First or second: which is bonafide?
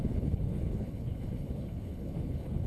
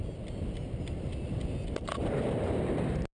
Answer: second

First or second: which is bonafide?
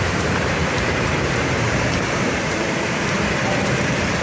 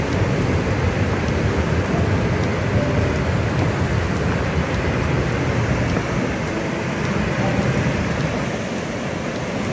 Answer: second